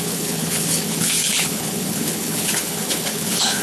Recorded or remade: remade